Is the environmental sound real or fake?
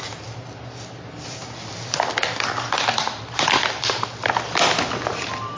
real